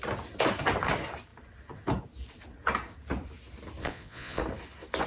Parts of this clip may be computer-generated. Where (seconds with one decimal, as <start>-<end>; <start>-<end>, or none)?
3.8-4.4